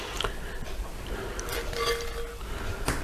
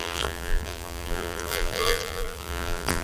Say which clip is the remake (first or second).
second